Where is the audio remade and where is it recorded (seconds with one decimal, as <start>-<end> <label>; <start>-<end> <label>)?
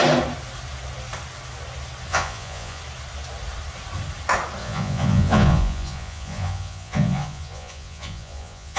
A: 0.0-2.1 recorded; 2.1-2.8 remade; 2.8-4.6 recorded; 4.6-8.8 remade